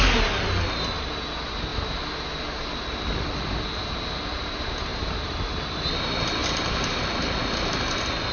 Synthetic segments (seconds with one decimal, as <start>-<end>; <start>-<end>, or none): 4.9-5.6; 6.4-7.0

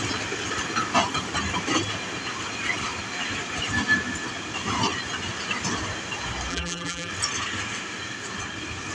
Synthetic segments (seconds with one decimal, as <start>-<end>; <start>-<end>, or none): 6.5-7.1

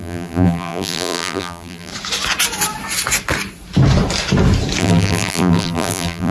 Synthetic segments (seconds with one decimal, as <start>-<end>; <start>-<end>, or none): 0.0-1.9; 4.8-6.3

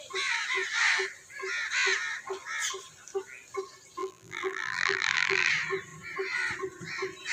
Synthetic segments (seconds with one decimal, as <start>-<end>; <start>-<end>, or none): 4.0-5.5

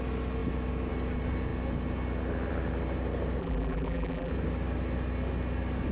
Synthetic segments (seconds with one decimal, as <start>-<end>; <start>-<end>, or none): 3.4-4.3